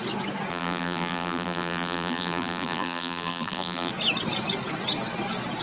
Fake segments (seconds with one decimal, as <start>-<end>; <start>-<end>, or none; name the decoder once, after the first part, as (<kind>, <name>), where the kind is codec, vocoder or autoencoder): 0.5-3.9 (vocoder, BigVGAN v2)